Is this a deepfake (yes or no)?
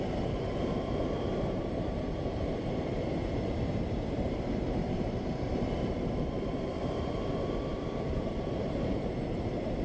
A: yes